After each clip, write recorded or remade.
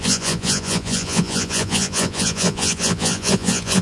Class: remade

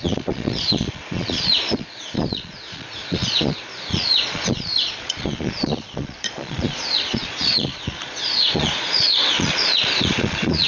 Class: remade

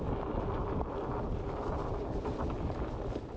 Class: recorded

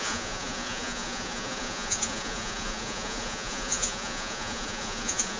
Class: remade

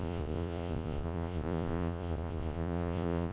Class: remade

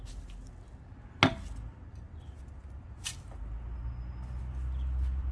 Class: recorded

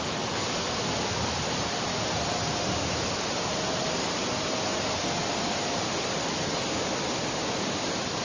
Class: recorded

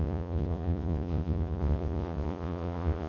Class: remade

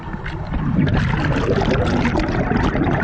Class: recorded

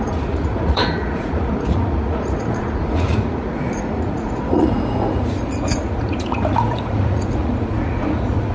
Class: remade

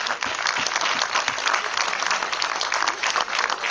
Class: recorded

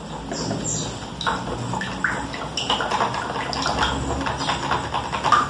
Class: recorded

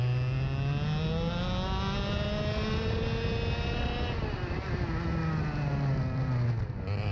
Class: recorded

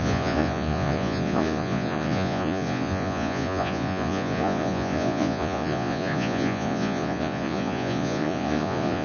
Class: remade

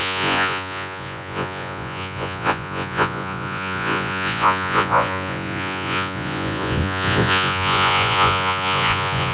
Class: remade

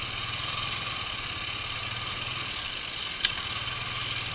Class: recorded